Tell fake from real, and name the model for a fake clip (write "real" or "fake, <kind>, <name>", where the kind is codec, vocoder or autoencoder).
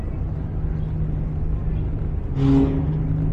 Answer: real